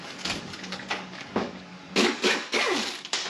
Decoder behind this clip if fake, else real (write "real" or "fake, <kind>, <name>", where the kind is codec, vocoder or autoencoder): fake, codec, DAC